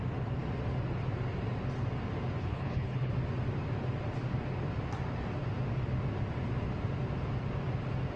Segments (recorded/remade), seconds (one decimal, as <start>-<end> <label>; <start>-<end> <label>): 0.0-2.4 recorded; 2.4-3.1 remade; 3.1-8.2 recorded